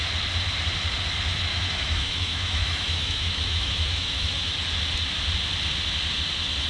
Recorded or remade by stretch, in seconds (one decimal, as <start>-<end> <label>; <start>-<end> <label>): 0.0-1.5 recorded; 1.5-4.5 remade; 4.5-6.7 recorded

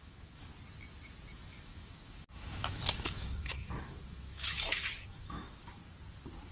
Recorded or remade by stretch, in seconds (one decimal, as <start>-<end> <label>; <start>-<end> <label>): 0.0-0.5 remade; 0.5-1.3 recorded; 1.3-5.8 remade; 5.8-6.5 recorded